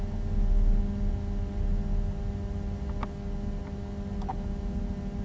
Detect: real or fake real